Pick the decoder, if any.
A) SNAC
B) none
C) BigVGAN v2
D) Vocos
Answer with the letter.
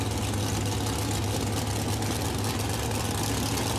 B